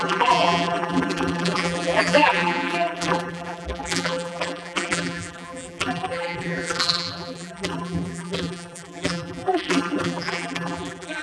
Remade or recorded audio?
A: remade